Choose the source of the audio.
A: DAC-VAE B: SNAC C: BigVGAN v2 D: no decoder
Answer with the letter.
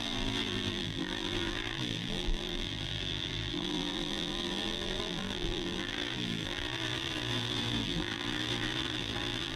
C